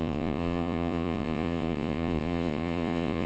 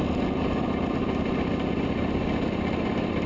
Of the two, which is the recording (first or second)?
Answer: second